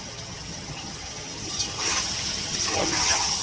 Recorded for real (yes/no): no